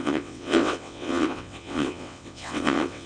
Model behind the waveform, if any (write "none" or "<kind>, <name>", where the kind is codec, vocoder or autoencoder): vocoder, WaveNeXt